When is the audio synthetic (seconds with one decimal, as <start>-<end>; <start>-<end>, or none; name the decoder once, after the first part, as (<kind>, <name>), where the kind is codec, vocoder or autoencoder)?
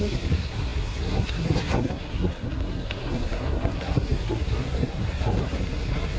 0.0-6.2 (codec, SNAC)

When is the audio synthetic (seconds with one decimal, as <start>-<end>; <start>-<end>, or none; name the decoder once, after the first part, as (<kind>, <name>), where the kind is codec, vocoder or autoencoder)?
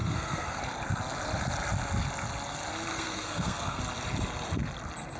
0.0-0.6 (codec, SNAC); 2.9-3.8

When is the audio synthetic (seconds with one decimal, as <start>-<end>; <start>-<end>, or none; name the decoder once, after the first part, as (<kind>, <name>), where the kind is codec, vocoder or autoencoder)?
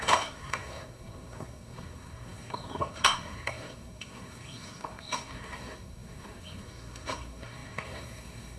0.0-8.6 (codec, SNAC)